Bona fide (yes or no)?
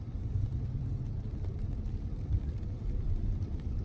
no